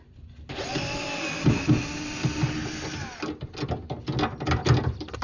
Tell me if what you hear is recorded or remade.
recorded